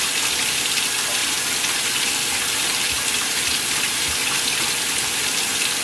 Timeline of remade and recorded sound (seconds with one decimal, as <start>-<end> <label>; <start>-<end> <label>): 0.0-5.8 remade